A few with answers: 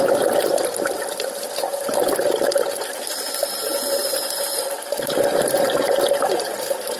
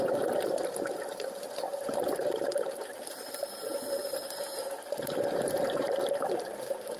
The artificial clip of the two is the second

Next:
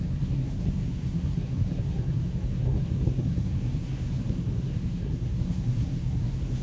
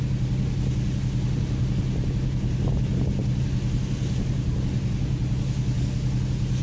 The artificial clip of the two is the first